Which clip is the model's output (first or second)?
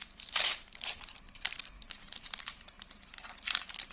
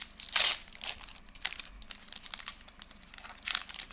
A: first